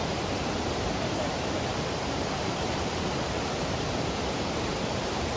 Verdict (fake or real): fake